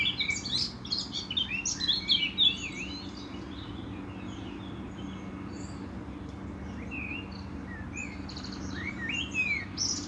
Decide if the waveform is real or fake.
real